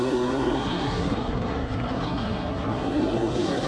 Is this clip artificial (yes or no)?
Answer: yes